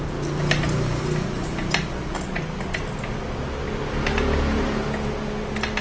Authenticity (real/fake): real